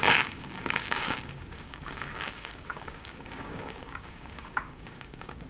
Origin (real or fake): fake